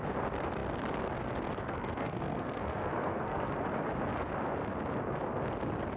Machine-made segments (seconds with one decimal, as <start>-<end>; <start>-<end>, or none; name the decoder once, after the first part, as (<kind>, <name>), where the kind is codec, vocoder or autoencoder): 1.6-3.5 (codec, SNAC)